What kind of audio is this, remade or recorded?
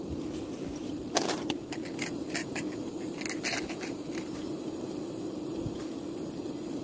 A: recorded